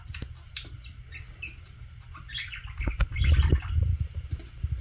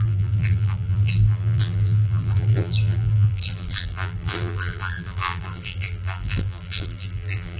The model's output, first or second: second